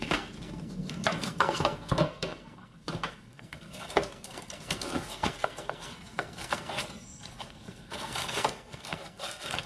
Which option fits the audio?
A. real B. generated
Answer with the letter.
B